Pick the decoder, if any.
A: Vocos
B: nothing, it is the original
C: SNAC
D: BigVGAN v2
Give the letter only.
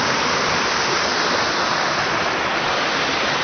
B